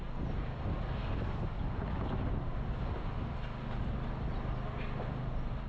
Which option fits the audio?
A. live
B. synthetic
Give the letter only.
A